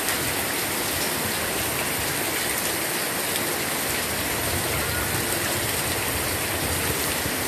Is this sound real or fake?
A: real